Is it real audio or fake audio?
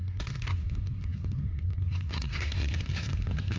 fake